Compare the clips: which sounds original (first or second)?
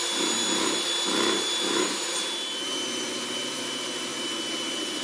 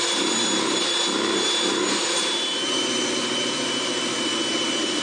first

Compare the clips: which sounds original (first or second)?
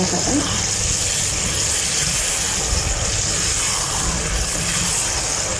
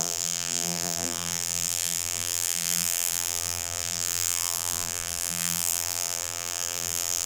first